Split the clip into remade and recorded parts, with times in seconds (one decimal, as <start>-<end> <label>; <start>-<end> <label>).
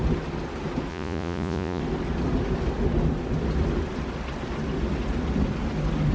0.0-0.9 recorded; 0.9-1.8 remade; 1.8-6.1 recorded